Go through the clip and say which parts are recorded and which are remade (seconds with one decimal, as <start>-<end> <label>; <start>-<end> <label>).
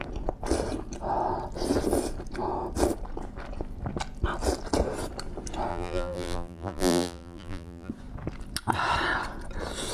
0.0-5.7 recorded; 5.7-7.9 remade; 7.9-9.9 recorded